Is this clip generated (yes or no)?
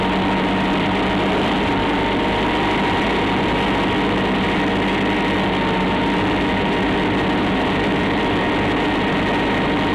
no